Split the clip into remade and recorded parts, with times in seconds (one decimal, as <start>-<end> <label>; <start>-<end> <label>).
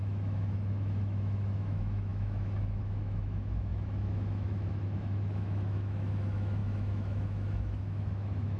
0.0-8.6 remade